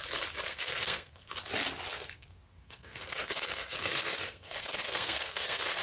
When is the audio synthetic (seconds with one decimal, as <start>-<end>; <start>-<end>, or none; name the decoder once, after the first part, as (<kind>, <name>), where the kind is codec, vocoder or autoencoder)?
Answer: 0.5-1.3 (codec, SNAC); 1.9-5.8

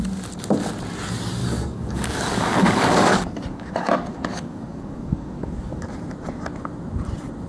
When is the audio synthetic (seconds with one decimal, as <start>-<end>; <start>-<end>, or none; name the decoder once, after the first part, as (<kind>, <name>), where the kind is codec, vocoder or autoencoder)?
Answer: 1.4-5.9 (codec, DAC)

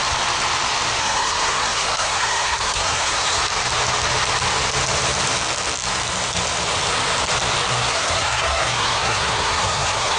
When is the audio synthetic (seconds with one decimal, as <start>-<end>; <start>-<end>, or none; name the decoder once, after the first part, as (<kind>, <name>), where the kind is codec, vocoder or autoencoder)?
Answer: 1.0-3.4 (codec, SNAC); 7.7-10.2

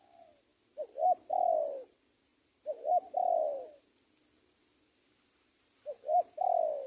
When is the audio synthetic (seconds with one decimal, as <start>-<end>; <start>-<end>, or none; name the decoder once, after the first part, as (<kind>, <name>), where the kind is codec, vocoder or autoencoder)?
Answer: none